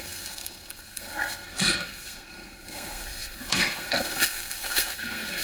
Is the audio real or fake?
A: fake